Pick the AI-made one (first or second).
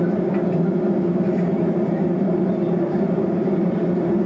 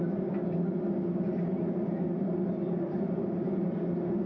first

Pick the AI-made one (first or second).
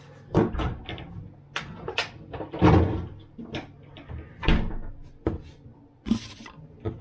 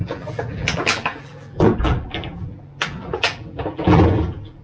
second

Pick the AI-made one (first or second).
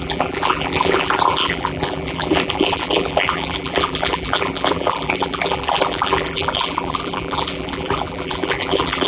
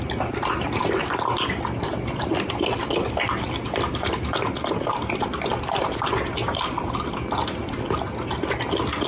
first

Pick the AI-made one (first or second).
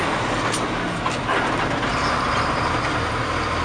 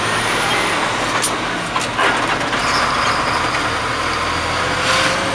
first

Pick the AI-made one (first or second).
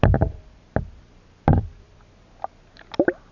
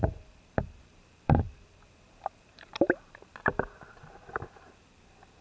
second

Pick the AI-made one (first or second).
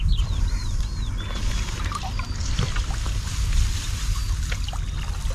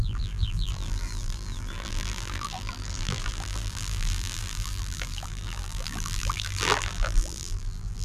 second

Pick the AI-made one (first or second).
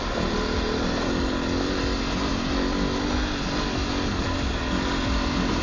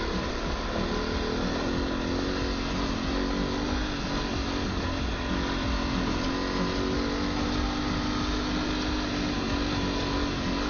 first